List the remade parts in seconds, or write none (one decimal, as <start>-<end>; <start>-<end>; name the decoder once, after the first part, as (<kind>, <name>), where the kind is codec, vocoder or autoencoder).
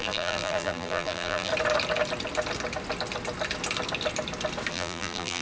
0.0-1.5 (vocoder, BigVGAN v2); 4.7-5.4